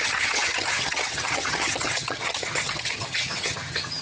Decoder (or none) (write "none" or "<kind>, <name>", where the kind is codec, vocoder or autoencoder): vocoder, HiFi-GAN